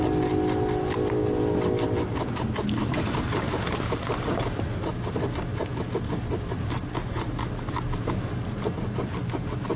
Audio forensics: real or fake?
real